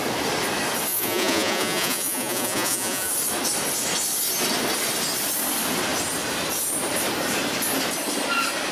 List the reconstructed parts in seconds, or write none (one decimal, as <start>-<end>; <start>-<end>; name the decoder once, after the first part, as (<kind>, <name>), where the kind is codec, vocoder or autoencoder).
0.9-3.1 (vocoder, Vocos)